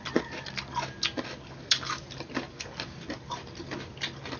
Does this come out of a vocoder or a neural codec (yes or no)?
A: yes